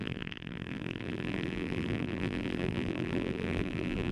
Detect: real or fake fake